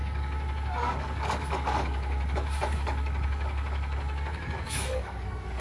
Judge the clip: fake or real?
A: fake